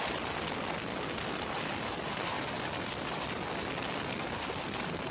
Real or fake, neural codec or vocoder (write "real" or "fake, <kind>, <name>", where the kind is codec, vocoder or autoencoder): real